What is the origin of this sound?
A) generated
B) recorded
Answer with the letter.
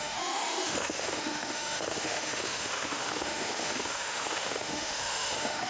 A